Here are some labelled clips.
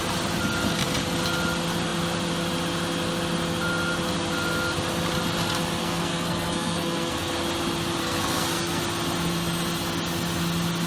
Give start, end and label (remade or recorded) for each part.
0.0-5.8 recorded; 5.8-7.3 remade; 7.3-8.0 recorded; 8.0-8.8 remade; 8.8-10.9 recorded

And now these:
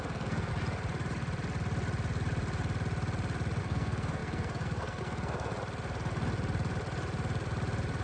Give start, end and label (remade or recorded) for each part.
0.0-0.5 remade; 0.5-3.6 recorded; 3.6-5.5 remade; 5.5-8.0 recorded

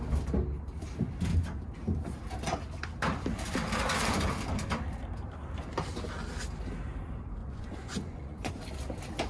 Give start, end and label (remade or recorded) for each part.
0.0-7.4 recorded; 7.4-8.5 remade; 8.5-9.3 recorded

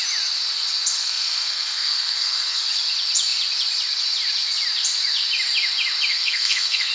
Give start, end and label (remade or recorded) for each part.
0.0-1.0 recorded; 1.0-2.6 remade; 2.6-6.1 recorded; 6.1-6.9 remade

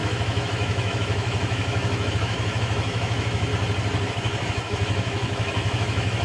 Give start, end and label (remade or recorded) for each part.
0.0-3.5 remade; 3.5-4.1 recorded; 4.1-6.2 remade

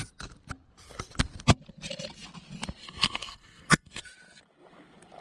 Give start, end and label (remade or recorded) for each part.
0.0-2.8 recorded; 2.8-4.0 remade; 4.0-5.2 recorded

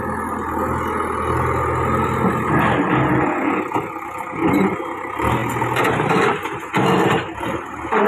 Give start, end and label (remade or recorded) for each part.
0.0-8.1 recorded

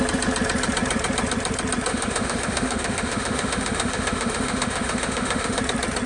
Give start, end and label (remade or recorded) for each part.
0.0-1.9 recorded; 1.9-5.6 remade; 5.6-6.1 recorded